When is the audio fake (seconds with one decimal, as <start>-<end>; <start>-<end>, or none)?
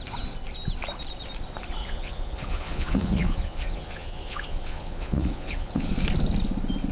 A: 1.8-5.9